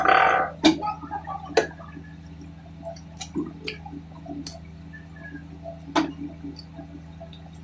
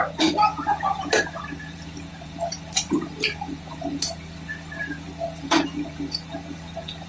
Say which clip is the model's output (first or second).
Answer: second